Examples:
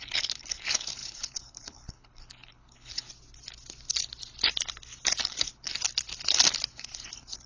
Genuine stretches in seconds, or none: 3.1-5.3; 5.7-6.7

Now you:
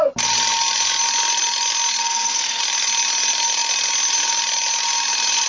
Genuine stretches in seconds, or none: 0.0-2.0; 2.6-5.5

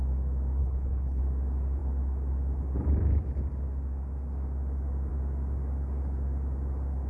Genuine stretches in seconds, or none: 0.0-0.6; 1.2-7.1